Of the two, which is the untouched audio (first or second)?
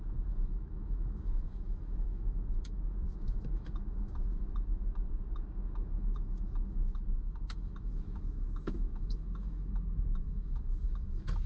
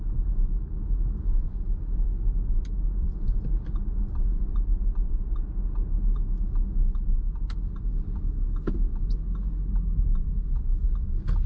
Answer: second